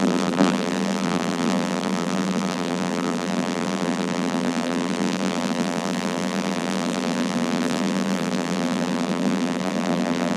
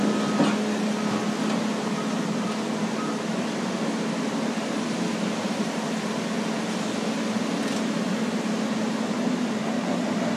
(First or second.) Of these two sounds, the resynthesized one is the first